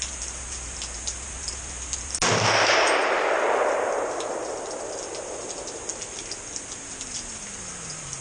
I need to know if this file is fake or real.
real